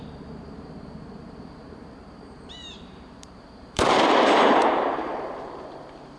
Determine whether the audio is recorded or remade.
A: remade